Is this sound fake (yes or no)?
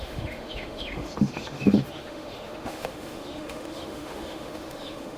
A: yes